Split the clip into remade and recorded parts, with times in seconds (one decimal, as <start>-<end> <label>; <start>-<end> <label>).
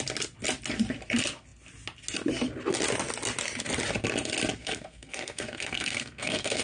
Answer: 0.0-4.6 recorded; 4.6-6.6 remade